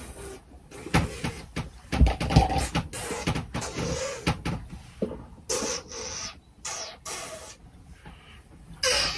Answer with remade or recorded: recorded